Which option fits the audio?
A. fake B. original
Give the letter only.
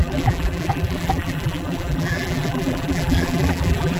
A